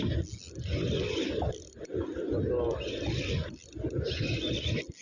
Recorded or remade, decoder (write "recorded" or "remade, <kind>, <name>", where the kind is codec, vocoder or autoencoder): recorded